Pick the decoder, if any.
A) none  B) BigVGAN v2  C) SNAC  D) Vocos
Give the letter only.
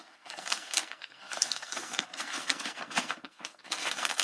C